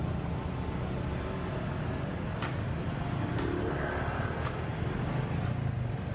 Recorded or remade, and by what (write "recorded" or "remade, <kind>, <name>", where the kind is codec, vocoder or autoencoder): recorded